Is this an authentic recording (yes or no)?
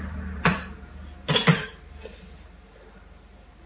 yes